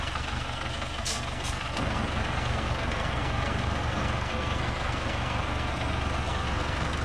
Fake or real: fake